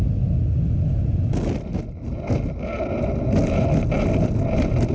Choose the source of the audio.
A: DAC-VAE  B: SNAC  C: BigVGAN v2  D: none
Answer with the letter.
D